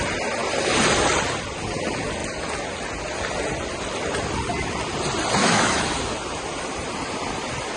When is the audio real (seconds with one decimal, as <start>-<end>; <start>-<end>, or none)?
0.0-5.4; 6.1-7.8